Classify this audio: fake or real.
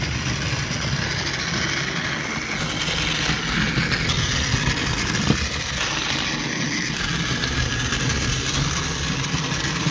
real